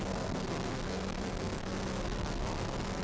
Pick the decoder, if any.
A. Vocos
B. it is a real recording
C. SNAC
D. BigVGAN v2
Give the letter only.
C